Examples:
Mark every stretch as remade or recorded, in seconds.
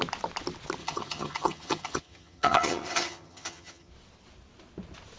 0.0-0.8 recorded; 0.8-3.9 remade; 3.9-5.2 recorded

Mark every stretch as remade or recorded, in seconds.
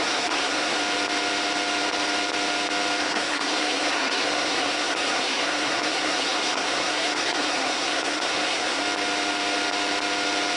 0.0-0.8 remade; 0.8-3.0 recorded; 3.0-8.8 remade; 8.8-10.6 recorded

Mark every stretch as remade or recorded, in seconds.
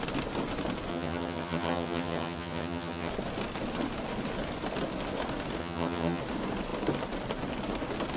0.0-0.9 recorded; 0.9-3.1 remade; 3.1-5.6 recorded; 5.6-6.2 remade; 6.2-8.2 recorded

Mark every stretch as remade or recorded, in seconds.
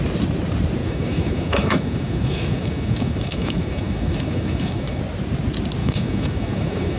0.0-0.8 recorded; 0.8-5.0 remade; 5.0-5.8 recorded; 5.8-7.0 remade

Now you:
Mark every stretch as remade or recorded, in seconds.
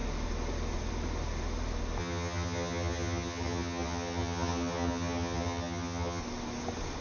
0.0-2.0 recorded; 2.0-6.2 remade; 6.2-7.0 recorded